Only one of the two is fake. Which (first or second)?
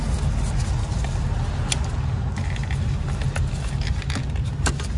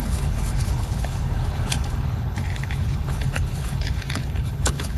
second